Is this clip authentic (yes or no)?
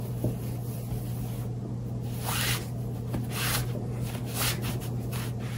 yes